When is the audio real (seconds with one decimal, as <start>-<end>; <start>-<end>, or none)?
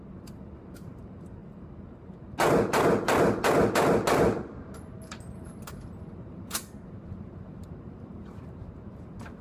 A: 1.4-5.2